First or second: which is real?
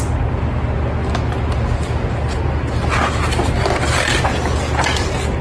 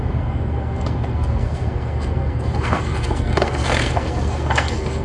first